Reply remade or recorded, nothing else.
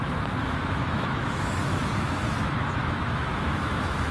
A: remade